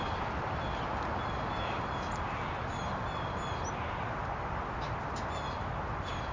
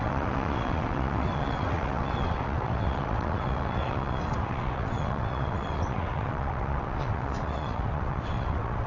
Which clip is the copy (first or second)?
second